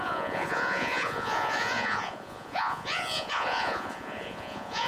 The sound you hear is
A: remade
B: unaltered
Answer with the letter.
A